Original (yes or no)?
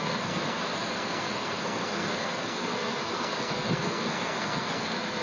no